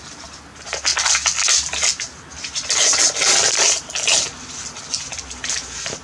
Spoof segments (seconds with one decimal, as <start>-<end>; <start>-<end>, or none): none